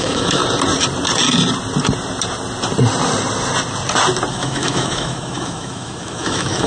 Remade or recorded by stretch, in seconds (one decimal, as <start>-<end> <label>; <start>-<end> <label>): 0.0-0.4 remade; 0.4-4.3 recorded; 4.3-6.7 remade